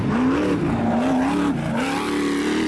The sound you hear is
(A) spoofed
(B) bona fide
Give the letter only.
B